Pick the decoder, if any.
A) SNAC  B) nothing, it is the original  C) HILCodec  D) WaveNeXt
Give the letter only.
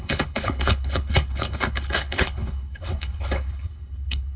C